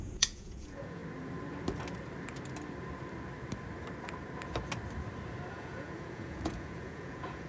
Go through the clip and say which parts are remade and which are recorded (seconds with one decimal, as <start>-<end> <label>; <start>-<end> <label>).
0.0-1.0 remade; 1.0-5.5 recorded; 5.5-7.5 remade

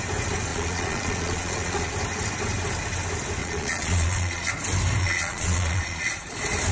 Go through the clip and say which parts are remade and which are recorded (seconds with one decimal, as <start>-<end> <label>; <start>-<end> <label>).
0.0-0.5 recorded; 0.5-1.9 remade; 1.9-3.4 recorded; 3.4-4.5 remade; 4.5-5.0 recorded; 5.0-6.1 remade; 6.1-6.7 recorded

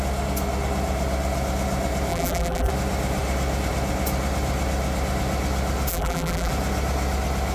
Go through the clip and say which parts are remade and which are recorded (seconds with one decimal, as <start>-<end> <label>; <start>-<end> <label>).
0.0-2.1 recorded; 2.1-2.7 remade; 2.7-5.9 recorded; 5.9-6.5 remade; 6.5-7.5 recorded